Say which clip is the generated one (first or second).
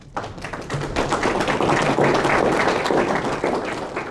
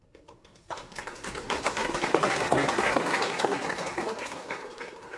second